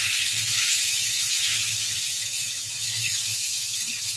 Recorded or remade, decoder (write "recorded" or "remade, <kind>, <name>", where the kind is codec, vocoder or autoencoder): remade, autoencoder, DAC-VAE